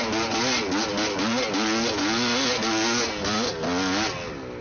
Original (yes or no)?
yes